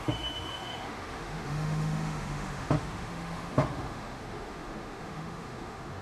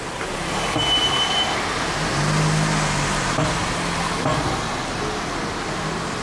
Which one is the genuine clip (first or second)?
second